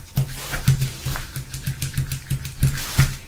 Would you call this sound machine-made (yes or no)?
no